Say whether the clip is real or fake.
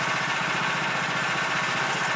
real